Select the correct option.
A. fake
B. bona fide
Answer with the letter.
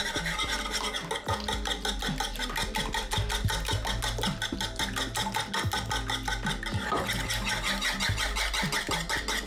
B